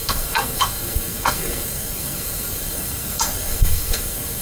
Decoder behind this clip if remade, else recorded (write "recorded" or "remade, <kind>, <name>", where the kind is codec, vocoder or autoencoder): remade, codec, SNAC